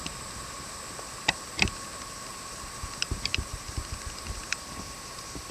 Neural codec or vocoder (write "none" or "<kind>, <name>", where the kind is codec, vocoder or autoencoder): none